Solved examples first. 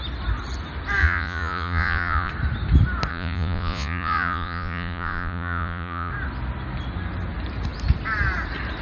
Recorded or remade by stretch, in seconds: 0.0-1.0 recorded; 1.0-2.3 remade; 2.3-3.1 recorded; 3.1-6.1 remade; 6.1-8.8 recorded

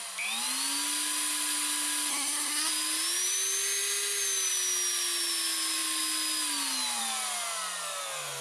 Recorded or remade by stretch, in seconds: 0.0-2.1 recorded; 2.1-2.7 remade; 2.7-8.4 recorded

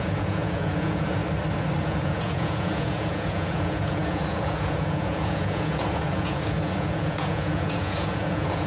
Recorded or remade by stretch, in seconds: 0.0-1.2 remade; 1.2-1.8 recorded; 1.8-8.7 remade

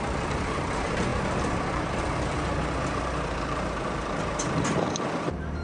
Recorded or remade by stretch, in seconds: 0.0-5.6 remade

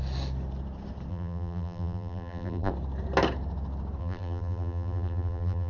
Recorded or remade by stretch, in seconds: 0.0-1.1 recorded; 1.1-2.7 remade; 2.7-4.0 recorded; 4.0-5.7 remade

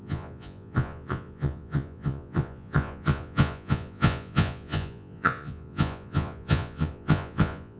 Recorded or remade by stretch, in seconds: 0.0-7.8 remade

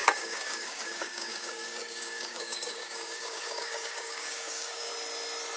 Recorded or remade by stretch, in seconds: 0.0-4.9 remade; 4.9-5.6 recorded

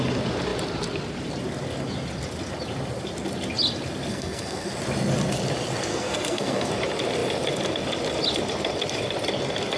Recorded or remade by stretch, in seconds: 0.0-4.1 recorded; 4.1-4.7 remade; 4.7-5.9 recorded; 5.9-6.7 remade; 6.7-9.8 recorded